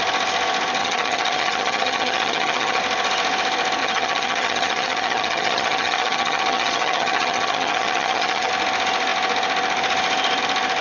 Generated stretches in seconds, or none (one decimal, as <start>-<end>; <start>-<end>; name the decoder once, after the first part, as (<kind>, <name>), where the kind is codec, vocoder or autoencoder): 0.8-2.8 (vocoder, HiFi-GAN); 3.8-8.5